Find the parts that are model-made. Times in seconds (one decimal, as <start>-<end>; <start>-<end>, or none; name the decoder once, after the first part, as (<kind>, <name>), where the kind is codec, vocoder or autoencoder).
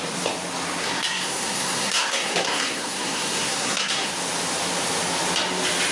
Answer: 0.8-4.1 (codec, SNAC)